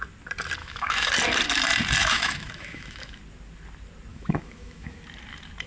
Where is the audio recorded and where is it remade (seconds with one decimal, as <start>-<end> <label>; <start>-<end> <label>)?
0.0-0.6 recorded; 0.6-1.1 remade; 1.1-2.0 recorded; 2.0-3.2 remade; 3.2-4.1 recorded; 4.1-5.0 remade; 5.0-5.7 recorded